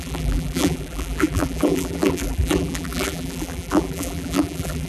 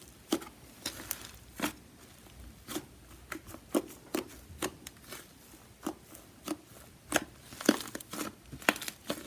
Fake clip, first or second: first